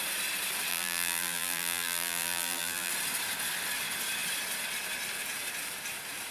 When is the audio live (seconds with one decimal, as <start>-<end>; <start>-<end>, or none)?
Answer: 0.0-0.7; 2.9-6.3